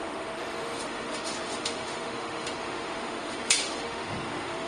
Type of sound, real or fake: fake